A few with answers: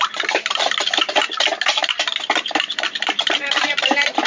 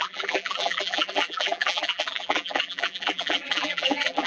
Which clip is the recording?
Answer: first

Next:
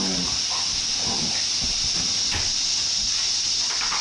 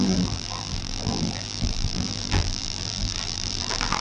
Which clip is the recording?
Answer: first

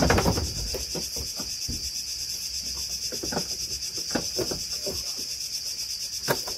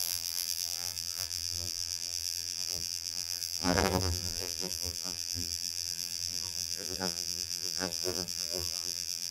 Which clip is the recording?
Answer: first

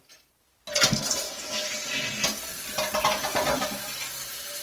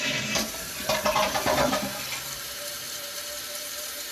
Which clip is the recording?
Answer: first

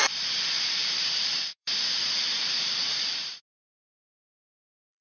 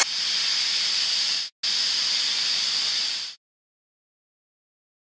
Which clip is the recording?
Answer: second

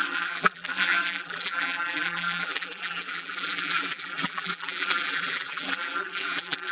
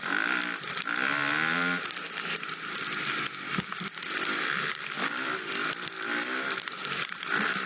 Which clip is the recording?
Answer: second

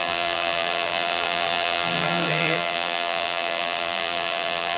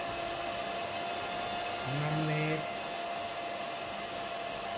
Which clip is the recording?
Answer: second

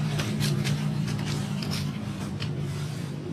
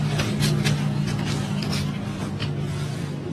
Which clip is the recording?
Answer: second